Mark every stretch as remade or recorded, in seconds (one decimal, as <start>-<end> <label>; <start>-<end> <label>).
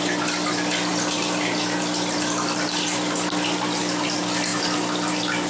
0.0-5.5 recorded